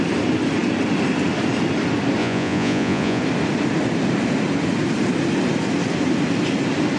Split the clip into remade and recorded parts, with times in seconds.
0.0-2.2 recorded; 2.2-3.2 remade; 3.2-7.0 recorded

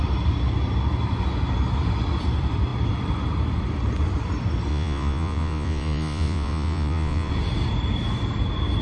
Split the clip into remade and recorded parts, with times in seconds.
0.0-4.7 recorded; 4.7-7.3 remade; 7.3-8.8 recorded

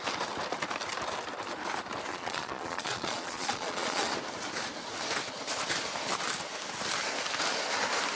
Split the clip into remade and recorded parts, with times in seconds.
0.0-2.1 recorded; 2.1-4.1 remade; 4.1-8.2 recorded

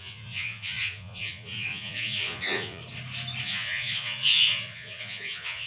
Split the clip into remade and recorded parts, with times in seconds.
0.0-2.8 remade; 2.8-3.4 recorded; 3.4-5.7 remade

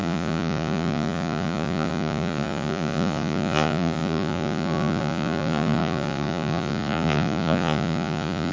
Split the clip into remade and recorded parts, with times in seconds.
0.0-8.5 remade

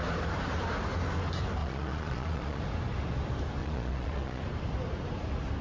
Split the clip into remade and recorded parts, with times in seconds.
0.0-1.6 recorded; 1.6-2.6 remade; 2.6-3.6 recorded; 3.6-4.4 remade; 4.4-5.6 recorded